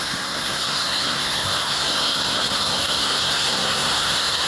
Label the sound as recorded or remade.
remade